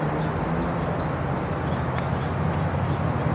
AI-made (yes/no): no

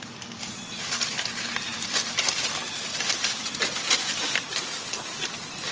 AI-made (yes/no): no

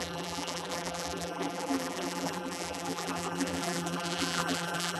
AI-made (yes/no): yes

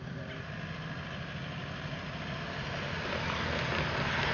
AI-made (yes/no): no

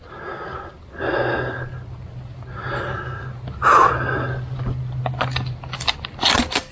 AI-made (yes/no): no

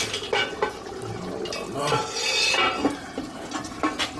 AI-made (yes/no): no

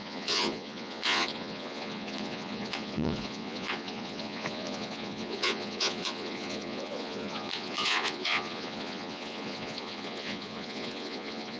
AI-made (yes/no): yes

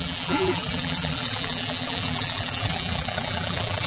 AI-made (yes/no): yes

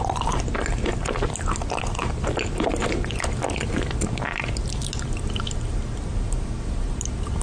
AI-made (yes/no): no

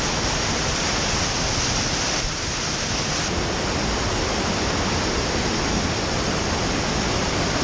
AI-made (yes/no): no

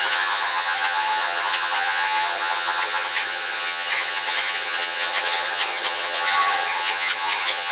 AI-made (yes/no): yes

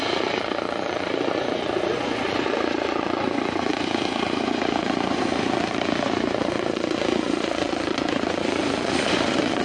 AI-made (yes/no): yes